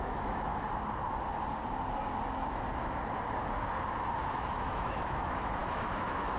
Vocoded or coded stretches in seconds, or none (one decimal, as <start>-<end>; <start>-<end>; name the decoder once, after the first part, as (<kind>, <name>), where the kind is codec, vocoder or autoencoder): 0.0-0.5 (autoencoder, DAC-VAE); 4.3-6.4